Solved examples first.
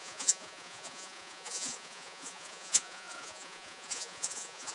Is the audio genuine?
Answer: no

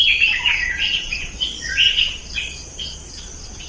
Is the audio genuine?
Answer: no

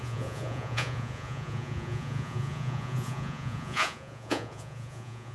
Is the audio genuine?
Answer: no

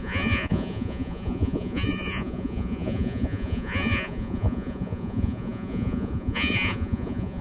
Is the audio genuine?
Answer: no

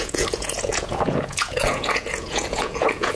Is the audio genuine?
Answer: no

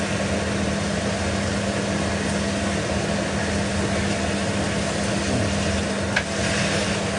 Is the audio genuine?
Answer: yes